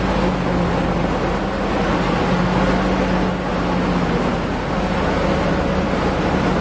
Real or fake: real